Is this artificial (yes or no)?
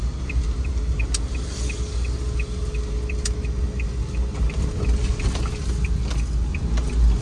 no